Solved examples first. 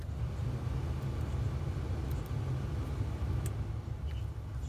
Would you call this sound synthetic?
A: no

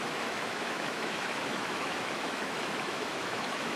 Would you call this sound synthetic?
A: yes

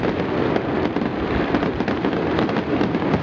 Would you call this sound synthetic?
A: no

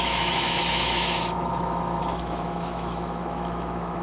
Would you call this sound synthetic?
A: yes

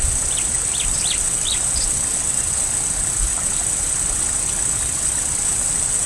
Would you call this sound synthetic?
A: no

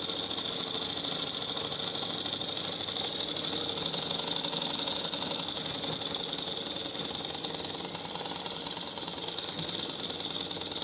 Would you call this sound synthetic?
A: no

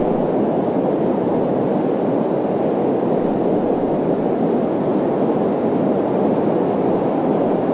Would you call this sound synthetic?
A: no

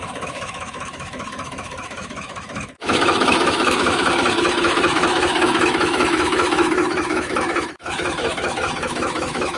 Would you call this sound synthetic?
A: yes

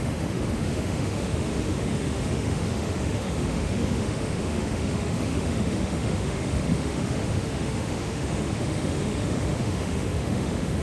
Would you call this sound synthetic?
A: yes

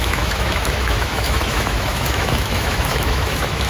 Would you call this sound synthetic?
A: yes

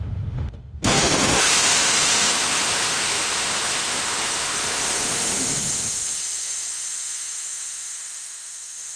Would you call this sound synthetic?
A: yes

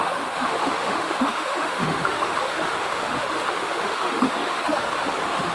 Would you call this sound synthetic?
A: yes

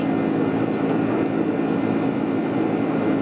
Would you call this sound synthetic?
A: no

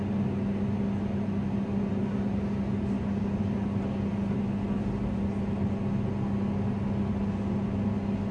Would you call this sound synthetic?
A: no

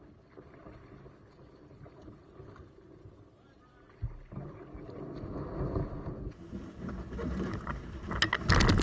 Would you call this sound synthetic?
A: no